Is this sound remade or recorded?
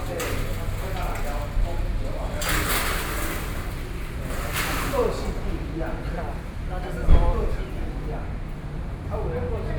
recorded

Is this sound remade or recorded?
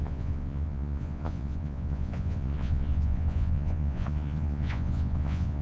remade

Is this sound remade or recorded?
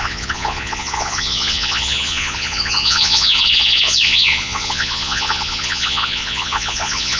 remade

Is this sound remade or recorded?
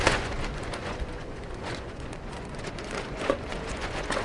remade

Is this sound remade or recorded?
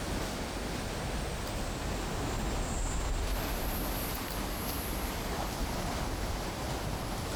recorded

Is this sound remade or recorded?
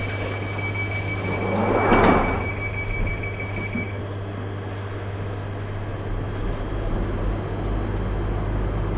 recorded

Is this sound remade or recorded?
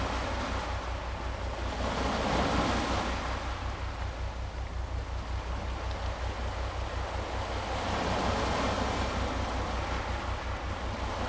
recorded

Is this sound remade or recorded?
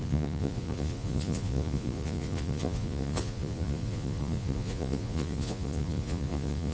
remade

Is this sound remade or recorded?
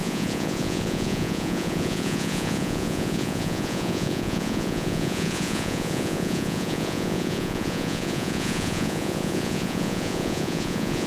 remade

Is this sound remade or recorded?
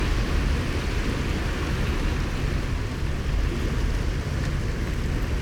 recorded